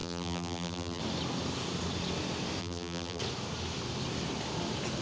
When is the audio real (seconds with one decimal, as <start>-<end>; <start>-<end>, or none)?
1.0-2.6; 3.2-5.0